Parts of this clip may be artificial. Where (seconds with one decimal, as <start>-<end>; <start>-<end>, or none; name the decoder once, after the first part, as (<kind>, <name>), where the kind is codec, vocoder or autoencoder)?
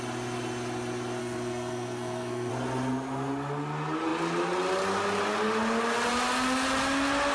1.2-2.5 (codec, SNAC)